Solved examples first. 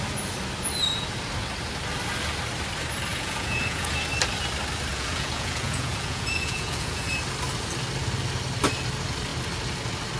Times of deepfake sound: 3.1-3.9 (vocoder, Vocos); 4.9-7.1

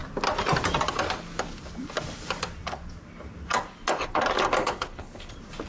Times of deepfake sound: 4.6-5.3 (codec, HILCodec)

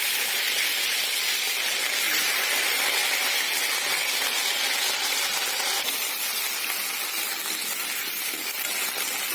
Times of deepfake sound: 0.9-1.6 (vocoder, BigVGAN v2)

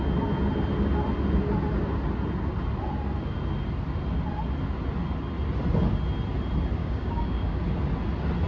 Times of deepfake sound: 6.8-7.6 (codec, DAC)